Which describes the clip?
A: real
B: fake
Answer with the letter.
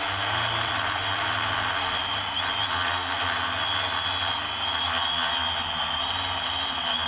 A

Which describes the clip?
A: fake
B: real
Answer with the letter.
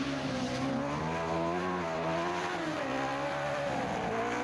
B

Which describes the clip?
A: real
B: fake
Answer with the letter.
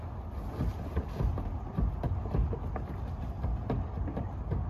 A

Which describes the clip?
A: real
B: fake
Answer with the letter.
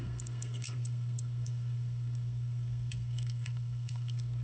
B